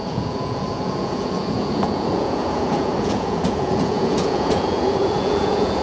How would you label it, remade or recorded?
remade